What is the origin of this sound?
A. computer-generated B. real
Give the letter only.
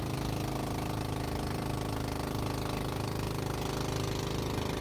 B